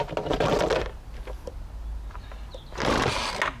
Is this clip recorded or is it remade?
recorded